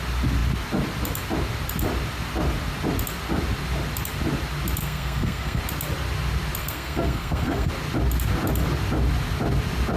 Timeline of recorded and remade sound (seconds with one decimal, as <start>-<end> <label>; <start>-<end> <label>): 0.0-4.8 recorded; 4.8-5.6 remade; 5.6-6.6 recorded; 6.6-7.7 remade; 7.7-10.0 recorded